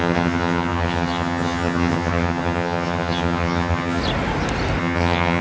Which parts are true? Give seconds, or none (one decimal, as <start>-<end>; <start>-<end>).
4.0-4.8